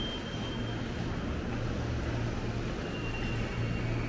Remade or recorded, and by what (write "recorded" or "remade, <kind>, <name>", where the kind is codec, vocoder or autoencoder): recorded